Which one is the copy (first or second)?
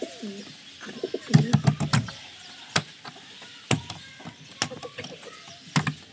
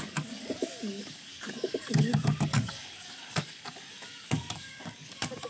second